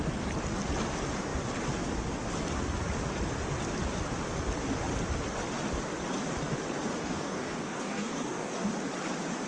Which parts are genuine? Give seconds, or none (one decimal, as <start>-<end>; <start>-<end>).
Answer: 0.0-7.0; 8.7-9.5